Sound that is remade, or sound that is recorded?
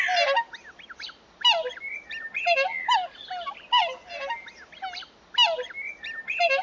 recorded